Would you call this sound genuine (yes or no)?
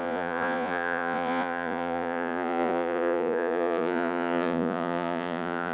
no